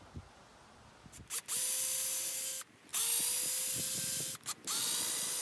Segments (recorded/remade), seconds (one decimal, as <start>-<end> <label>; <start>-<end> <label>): 0.0-5.4 recorded